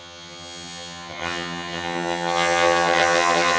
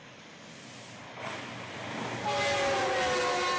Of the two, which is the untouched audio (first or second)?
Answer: second